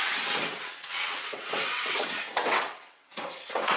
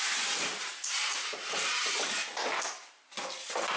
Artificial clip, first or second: first